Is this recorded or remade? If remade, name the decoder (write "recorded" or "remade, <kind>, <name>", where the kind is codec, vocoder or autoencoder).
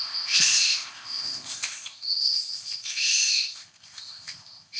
remade, codec, ZipCodec